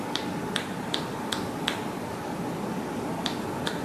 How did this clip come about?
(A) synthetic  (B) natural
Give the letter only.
B